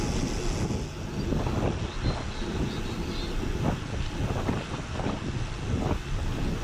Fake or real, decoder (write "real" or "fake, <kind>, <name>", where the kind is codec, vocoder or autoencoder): real